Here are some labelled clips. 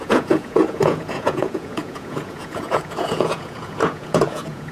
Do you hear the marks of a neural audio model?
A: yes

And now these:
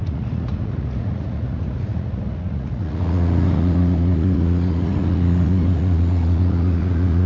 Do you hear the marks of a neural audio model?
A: yes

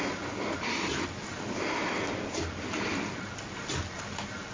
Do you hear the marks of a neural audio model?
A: no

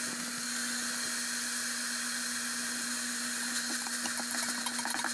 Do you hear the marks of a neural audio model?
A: no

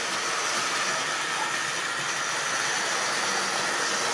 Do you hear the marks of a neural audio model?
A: no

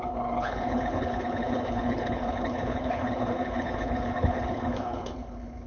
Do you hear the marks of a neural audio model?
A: yes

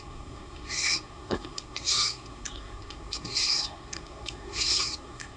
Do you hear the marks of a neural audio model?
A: yes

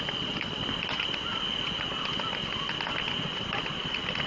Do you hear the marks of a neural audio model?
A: no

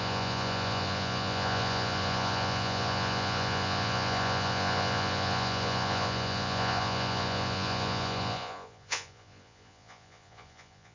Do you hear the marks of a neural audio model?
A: yes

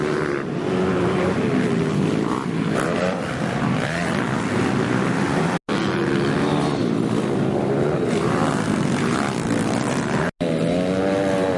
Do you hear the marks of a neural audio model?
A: no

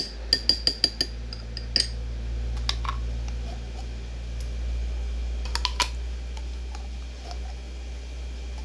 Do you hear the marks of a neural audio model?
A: no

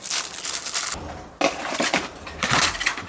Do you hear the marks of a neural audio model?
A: no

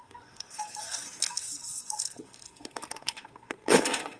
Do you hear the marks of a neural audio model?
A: yes